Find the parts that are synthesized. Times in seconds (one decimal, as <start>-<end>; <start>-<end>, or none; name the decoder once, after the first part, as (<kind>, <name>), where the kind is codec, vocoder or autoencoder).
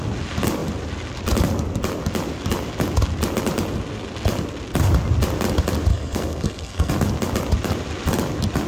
5.9-6.9 (codec, SNAC)